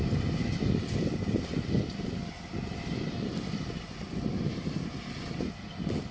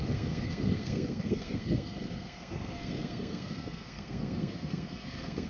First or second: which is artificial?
second